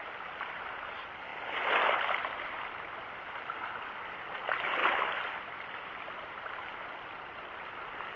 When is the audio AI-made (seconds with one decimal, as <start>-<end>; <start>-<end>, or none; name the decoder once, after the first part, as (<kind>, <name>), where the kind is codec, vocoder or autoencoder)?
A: 0.0-1.3 (vocoder, BigVGAN v2); 2.9-8.2